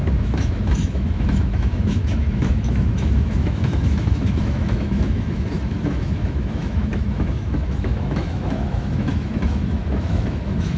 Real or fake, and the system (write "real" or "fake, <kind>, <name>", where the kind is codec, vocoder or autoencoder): fake, autoencoder, DAC-VAE